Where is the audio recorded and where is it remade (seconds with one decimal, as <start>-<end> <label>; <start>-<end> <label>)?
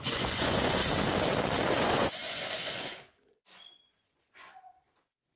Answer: 0.0-0.8 remade; 0.8-1.8 recorded; 1.8-5.4 remade